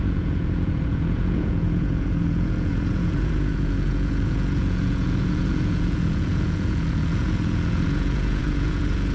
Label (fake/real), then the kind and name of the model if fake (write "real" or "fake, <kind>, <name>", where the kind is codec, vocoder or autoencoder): fake, vocoder, Vocos